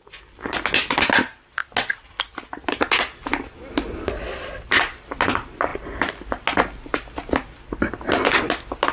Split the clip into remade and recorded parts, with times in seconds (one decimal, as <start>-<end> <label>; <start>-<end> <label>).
0.0-8.9 recorded